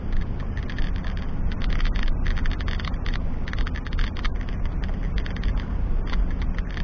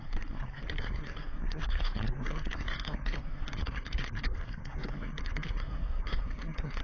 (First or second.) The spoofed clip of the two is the second